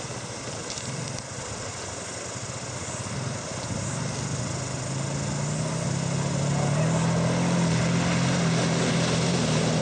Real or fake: real